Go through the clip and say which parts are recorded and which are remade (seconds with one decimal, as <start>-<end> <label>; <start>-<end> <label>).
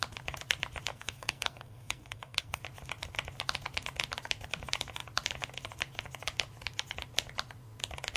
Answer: 0.0-0.9 recorded; 0.9-2.6 remade; 2.6-8.2 recorded